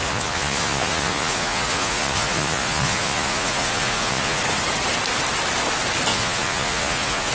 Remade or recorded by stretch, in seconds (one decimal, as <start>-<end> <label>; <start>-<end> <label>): 0.0-4.4 remade; 4.4-6.1 recorded; 6.1-7.3 remade